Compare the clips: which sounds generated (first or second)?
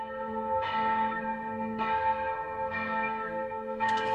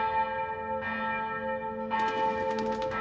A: first